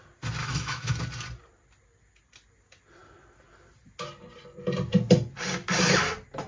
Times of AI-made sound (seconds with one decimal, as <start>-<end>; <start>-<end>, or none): 0.4-0.9